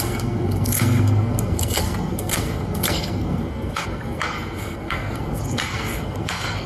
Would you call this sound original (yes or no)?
no